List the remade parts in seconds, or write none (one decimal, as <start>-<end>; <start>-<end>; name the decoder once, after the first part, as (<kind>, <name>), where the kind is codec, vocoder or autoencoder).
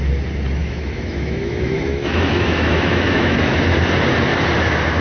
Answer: 0.6-3.6 (autoencoder, DAC-VAE)